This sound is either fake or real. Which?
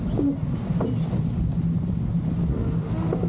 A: real